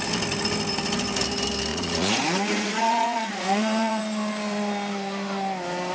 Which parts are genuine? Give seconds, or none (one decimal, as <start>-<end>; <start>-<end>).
0.0-1.7; 4.0-5.9